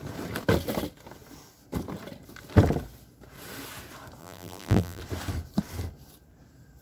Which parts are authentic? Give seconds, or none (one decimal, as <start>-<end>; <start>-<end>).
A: 0.0-4.2; 5.0-6.8